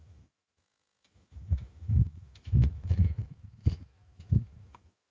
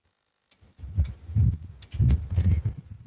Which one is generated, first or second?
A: first